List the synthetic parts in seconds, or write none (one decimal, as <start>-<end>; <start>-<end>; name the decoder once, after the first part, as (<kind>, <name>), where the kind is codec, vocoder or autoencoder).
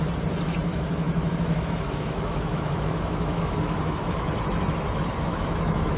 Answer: 0.7-4.3 (autoencoder, DAC-VAE); 5.3-6.0